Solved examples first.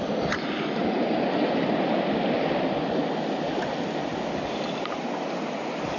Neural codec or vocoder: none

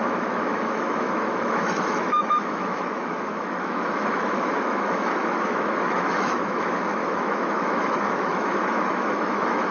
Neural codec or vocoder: autoencoder, DAC-VAE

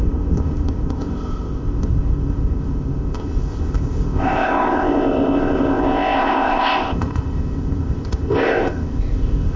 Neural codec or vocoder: codec, ZipCodec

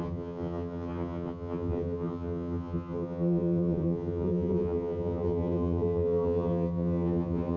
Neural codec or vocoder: vocoder, HiFi-GAN